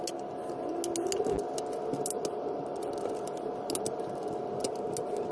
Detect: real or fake real